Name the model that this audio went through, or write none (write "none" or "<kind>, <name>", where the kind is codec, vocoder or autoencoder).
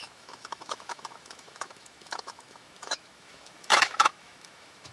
autoencoder, DAC-VAE